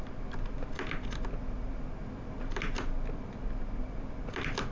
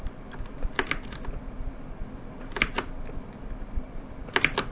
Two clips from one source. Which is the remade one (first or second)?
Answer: second